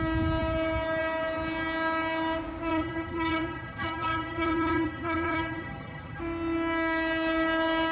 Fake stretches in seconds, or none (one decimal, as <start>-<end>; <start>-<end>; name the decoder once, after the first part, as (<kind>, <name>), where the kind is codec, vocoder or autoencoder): 2.7-6.2 (vocoder, HiFi-GAN)